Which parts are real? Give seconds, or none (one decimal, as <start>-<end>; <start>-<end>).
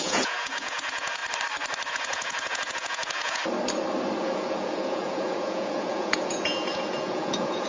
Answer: 1.2-1.9; 3.4-4.2